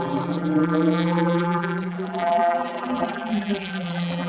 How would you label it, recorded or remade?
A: remade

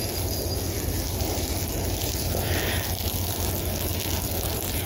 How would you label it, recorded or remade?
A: recorded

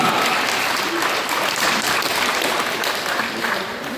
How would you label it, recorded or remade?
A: remade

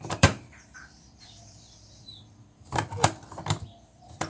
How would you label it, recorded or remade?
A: remade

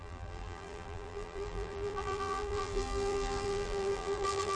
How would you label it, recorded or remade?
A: remade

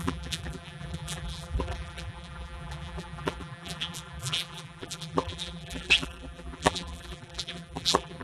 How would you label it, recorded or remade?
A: remade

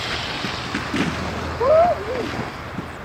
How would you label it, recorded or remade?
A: recorded